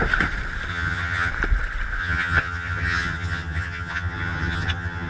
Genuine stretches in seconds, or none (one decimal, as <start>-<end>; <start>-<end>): 0.0-0.7; 1.3-2.0